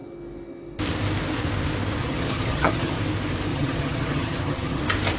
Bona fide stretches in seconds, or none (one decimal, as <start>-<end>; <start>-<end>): 0.0-2.0; 3.0-3.5; 4.8-5.2